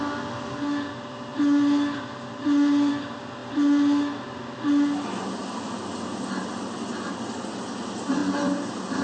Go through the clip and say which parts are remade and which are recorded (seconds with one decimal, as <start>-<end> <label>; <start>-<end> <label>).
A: 0.0-9.0 recorded